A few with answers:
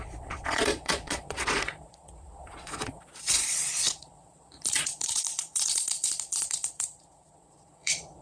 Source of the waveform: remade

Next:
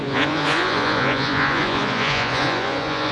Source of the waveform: remade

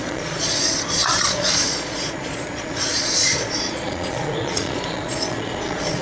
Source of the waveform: remade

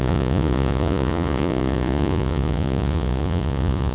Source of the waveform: remade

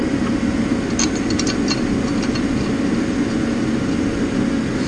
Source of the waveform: recorded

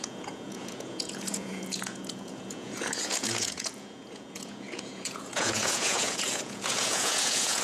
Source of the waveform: remade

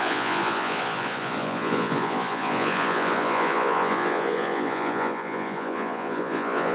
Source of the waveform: remade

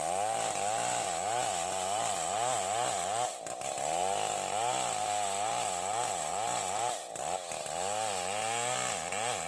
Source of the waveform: recorded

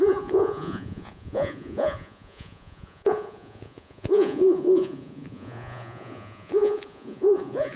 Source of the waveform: remade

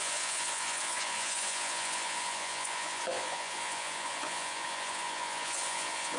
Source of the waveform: remade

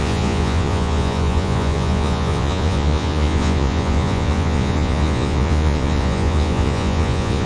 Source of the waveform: remade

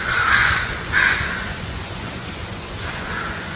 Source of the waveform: remade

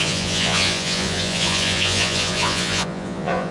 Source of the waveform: remade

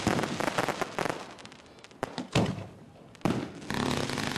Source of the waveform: recorded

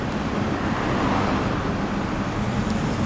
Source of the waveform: recorded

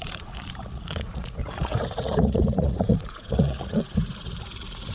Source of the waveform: remade